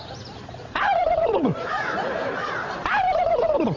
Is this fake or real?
fake